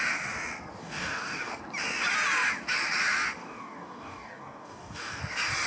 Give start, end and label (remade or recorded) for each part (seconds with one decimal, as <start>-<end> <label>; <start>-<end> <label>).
0.0-0.8 recorded; 0.8-1.5 remade; 1.5-3.4 recorded; 3.4-5.2 remade; 5.2-5.7 recorded